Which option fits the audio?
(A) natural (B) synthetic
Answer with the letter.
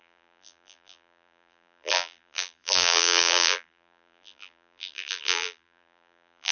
B